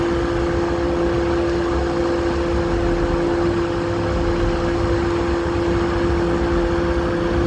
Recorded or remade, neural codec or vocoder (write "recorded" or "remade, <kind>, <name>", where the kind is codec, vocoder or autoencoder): recorded